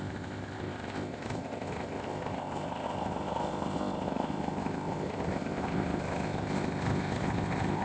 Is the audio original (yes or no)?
no